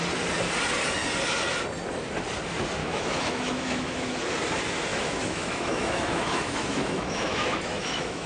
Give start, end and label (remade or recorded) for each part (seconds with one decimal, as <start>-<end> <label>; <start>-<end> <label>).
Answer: 0.0-2.8 recorded; 2.8-4.2 remade; 4.2-4.9 recorded; 4.9-8.3 remade